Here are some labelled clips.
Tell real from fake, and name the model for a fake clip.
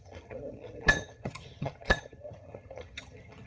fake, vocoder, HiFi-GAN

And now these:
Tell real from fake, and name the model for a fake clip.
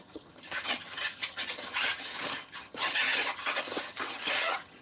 fake, vocoder, HiFi-GAN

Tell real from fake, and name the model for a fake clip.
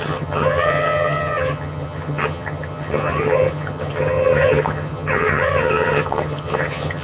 fake, vocoder, HiFi-GAN